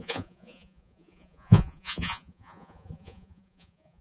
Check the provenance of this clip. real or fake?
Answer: fake